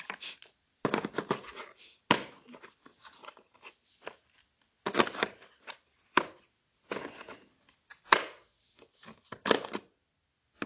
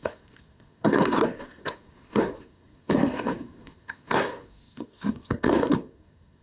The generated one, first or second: second